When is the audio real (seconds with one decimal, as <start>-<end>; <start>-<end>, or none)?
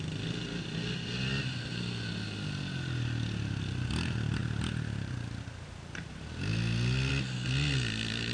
0.0-8.3